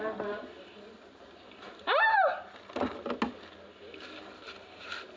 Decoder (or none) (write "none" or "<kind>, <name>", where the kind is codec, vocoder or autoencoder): none